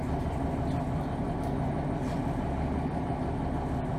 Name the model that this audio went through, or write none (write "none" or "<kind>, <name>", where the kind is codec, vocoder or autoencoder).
none